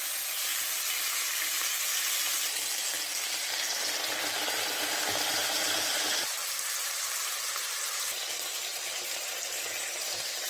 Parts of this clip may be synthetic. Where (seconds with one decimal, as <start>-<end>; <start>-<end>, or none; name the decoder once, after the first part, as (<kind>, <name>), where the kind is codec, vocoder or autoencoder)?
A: 0.0-0.5 (vocoder, BigVGAN v2); 4.5-10.5